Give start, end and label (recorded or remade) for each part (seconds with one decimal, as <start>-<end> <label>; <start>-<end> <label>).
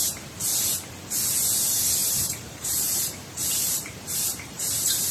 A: 0.0-2.0 recorded; 2.0-5.1 remade